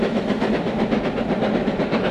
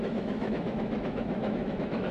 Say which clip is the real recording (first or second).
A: first